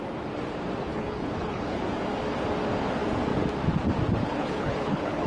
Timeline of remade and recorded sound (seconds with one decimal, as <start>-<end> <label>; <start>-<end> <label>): 0.0-0.9 recorded; 0.9-1.8 remade; 1.8-4.2 recorded; 4.2-5.3 remade